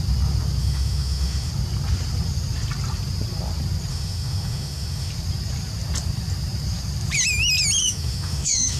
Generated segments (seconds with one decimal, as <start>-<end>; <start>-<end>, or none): 0.6-1.5; 3.9-5.1; 7.8-8.8

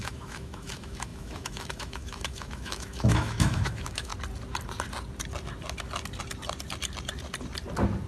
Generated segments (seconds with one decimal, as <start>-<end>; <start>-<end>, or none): 0.0-4.1

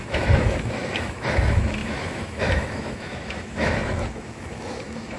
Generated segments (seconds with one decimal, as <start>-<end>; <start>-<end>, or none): 0.0-5.2

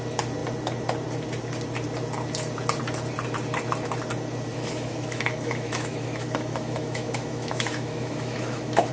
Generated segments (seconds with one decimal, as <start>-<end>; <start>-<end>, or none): 4.5-8.9

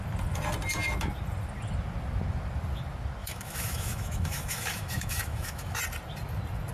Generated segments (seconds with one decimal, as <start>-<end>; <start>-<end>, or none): 3.2-5.8

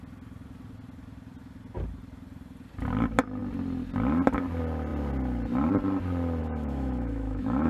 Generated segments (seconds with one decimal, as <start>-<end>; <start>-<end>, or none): 6.4-7.7

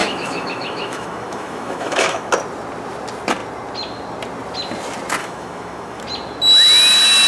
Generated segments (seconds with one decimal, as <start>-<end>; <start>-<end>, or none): 0.0-2.3; 5.2-6.0